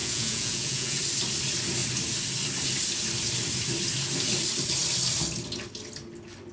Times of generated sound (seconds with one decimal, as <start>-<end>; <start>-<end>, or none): 0.0-1.0